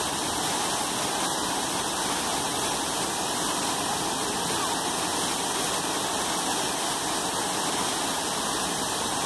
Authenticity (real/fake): real